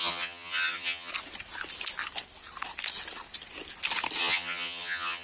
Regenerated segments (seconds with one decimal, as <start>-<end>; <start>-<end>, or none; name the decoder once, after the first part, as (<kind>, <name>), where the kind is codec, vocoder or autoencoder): 0.0-1.1 (vocoder, HiFi-GAN); 4.2-5.2